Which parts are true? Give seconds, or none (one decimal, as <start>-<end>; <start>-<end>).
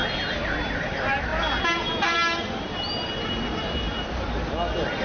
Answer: 0.0-5.0